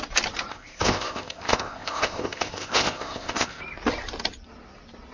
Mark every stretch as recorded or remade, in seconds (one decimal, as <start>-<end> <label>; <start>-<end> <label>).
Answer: 0.0-0.5 recorded; 0.5-3.6 remade; 3.6-5.1 recorded